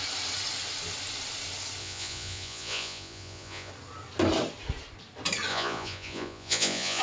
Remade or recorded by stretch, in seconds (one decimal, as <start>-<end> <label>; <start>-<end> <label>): 0.0-1.8 recorded; 1.8-3.7 remade; 3.7-5.5 recorded; 5.5-7.0 remade